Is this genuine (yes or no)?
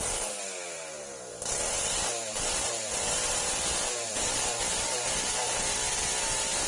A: no